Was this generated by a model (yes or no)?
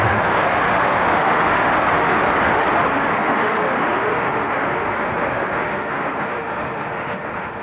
yes